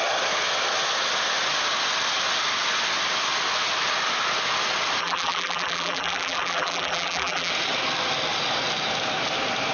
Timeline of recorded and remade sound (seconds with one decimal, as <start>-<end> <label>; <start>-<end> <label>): 0.0-5.0 recorded; 5.0-7.5 remade; 7.5-9.7 recorded